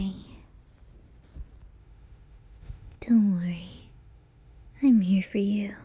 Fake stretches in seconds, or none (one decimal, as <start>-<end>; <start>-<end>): 1.8-5.3